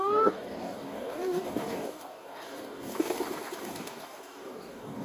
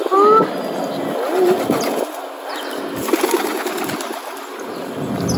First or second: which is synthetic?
first